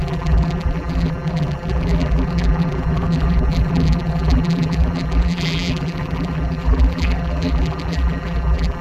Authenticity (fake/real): fake